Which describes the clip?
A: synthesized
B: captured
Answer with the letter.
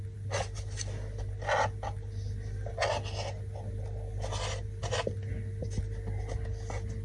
B